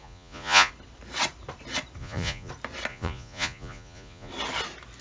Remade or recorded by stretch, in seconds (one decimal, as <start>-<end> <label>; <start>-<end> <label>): 0.0-0.7 remade; 0.7-2.0 recorded; 2.0-2.5 remade; 2.5-2.9 recorded; 2.9-4.3 remade; 4.3-5.0 recorded